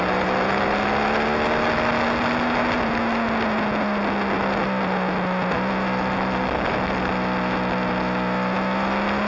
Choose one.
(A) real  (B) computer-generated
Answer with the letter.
A